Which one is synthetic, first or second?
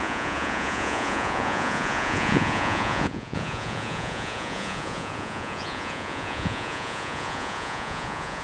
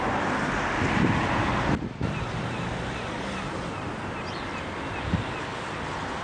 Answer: first